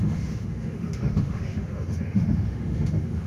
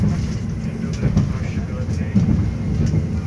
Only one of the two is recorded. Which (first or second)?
second